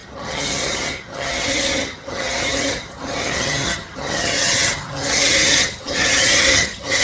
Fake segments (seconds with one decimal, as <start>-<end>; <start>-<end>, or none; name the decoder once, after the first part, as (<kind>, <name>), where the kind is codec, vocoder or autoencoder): 0.0-7.0 (vocoder, HiFi-GAN)